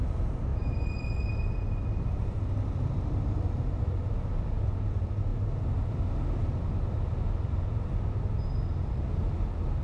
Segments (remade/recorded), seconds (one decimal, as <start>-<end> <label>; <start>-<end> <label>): 0.0-9.8 recorded